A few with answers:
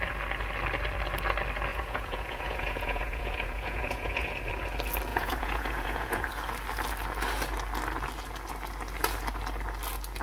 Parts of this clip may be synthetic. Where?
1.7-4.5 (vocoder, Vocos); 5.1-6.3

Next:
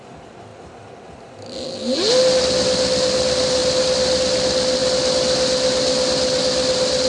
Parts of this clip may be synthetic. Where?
none

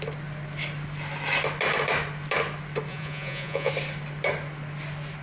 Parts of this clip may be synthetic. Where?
2.9-3.7 (vocoder, Vocos)

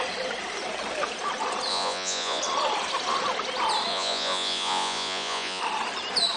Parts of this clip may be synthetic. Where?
1.7-2.4 (vocoder, Vocos); 3.9-5.6